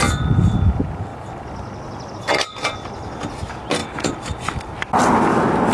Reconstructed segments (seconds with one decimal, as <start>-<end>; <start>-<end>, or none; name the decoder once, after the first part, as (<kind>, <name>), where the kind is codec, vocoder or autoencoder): none